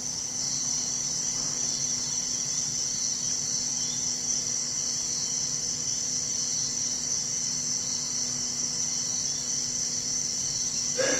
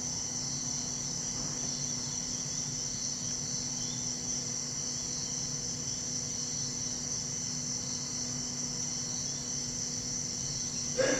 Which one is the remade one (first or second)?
first